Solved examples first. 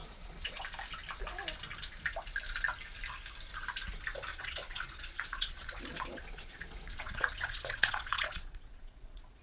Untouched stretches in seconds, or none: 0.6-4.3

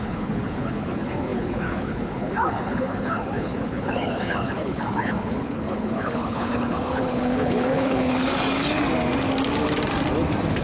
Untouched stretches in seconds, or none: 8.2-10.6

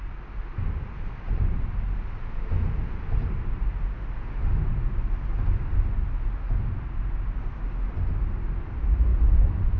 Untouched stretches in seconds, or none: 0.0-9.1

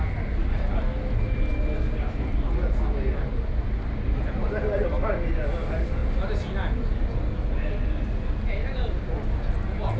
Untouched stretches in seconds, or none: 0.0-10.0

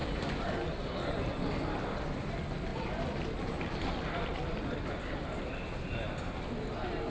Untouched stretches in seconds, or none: 0.8-4.3; 5.9-7.1